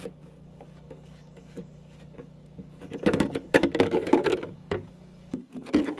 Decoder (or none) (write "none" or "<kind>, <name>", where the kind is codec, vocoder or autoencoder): codec, DAC